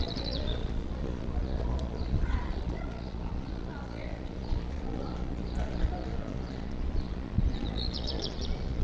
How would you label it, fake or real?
fake